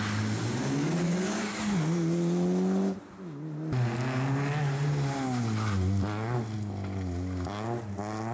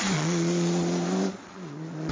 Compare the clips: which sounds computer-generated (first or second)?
second